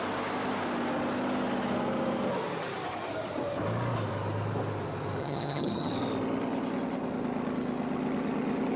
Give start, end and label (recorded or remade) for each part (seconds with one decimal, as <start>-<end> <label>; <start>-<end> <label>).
0.0-5.2 recorded; 5.2-5.9 remade; 5.9-8.8 recorded